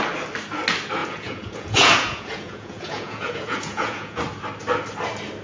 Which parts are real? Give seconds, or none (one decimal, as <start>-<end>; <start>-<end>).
0.0-1.0; 4.2-5.4